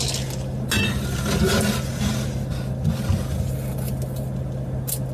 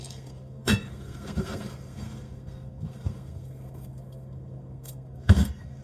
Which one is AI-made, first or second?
second